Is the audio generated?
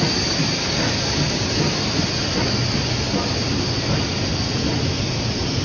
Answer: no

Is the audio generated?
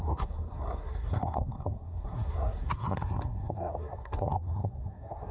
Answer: yes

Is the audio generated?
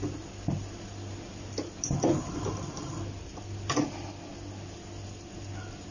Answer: no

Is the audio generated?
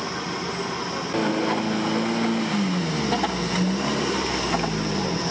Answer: no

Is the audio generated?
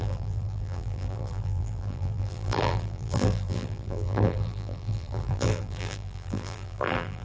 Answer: yes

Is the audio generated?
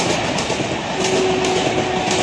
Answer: no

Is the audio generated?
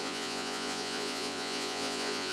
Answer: yes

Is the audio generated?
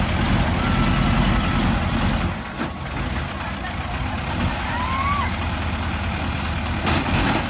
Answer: no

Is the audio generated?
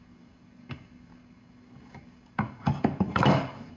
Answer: yes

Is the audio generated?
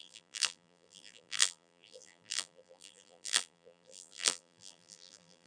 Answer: yes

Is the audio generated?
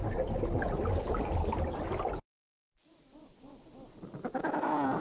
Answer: no